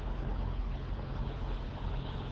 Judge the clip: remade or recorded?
remade